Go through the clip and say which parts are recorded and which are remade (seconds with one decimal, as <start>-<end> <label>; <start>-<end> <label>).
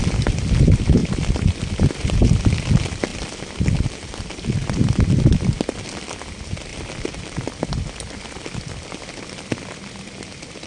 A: 0.0-1.0 recorded; 1.0-1.8 remade; 1.8-3.1 recorded; 3.1-4.4 remade; 4.4-10.7 recorded